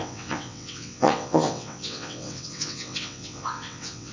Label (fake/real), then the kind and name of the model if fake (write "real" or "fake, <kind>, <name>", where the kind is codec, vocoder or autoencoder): fake, vocoder, WaveNeXt